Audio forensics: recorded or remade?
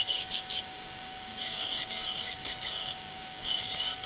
remade